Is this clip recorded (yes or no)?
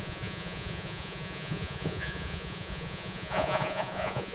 no